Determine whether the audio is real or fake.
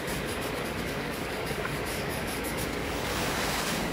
fake